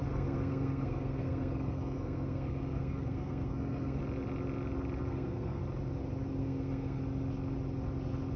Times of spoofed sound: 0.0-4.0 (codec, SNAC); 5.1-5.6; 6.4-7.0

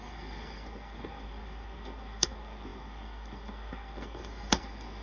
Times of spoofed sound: 0.0-5.0 (codec, SNAC)

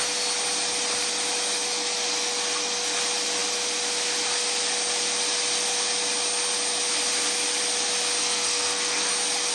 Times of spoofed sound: 8.2-9.1 (codec, SNAC)

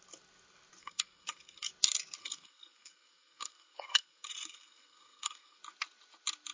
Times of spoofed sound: 0.8-1.7 (codec, SNAC); 2.2-5.6

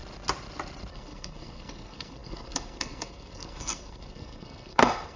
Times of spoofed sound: 0.9-5.2 (codec, SNAC)

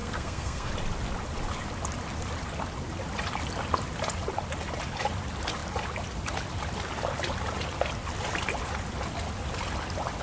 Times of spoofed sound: 0.0-0.7 (codec, SNAC)